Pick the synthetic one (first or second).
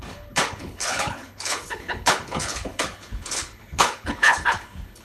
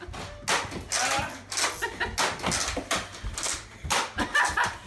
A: first